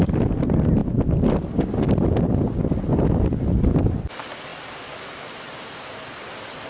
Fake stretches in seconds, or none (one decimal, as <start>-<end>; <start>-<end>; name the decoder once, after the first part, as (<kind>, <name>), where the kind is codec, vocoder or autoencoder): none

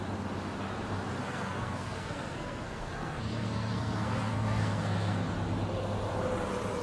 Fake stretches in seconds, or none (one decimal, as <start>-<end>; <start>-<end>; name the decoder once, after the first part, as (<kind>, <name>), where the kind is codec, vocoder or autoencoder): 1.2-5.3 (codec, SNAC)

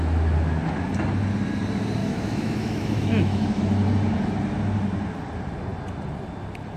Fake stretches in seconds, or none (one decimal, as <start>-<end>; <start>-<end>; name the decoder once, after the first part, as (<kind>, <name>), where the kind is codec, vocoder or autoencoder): 2.0-3.6 (autoencoder, DAC-VAE)

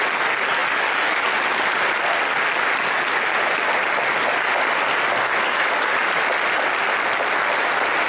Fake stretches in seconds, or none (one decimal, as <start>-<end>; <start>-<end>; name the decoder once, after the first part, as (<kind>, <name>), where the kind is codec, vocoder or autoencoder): none